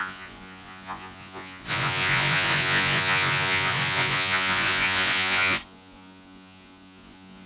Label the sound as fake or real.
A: fake